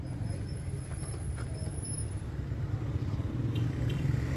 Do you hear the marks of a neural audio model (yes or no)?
no